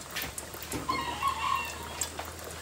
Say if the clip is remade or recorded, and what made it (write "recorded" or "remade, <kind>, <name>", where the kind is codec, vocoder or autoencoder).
recorded